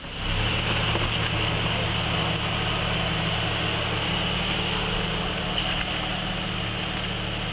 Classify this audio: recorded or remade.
recorded